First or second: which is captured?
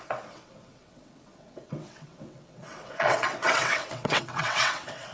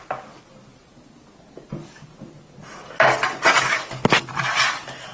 second